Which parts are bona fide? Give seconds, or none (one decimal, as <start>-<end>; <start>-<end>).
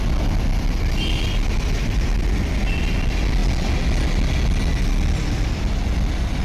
0.0-6.4